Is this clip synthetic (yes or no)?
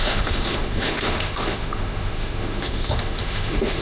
yes